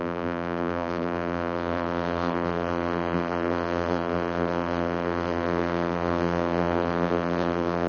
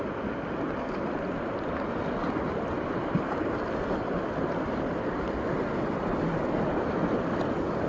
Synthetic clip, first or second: first